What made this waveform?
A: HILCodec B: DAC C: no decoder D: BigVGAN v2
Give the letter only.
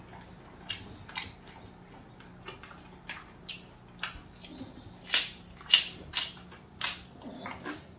C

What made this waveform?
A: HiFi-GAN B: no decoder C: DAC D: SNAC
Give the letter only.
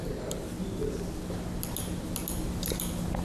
B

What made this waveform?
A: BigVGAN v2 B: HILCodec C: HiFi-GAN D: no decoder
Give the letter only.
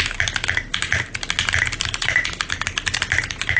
D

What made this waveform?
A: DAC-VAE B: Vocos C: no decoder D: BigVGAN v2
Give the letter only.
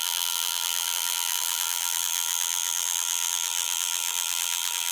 D